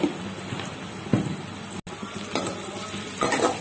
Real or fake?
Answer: real